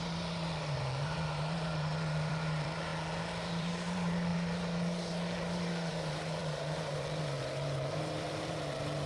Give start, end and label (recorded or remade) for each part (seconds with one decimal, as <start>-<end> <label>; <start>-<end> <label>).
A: 0.0-2.9 remade; 2.9-3.4 recorded; 3.4-9.1 remade